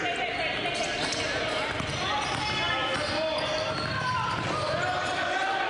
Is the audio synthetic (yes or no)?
no